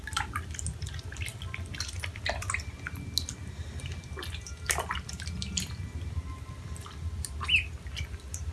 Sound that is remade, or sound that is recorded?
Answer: recorded